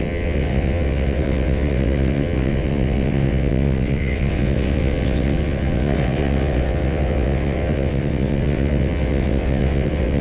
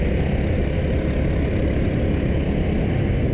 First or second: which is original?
second